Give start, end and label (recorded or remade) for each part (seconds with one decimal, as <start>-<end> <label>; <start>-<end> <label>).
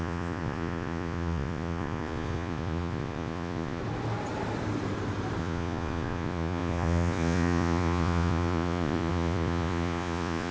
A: 0.0-3.8 remade; 3.8-5.4 recorded; 5.4-10.5 remade